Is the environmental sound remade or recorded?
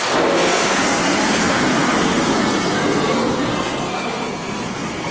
remade